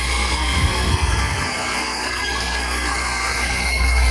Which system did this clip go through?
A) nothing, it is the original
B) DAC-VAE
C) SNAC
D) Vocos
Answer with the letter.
C